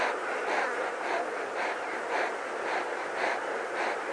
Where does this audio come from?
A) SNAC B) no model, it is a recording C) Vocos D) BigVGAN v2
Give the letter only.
B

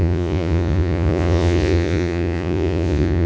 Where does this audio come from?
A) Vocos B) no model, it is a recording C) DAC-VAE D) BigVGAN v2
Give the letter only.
A